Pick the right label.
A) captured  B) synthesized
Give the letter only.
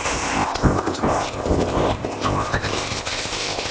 B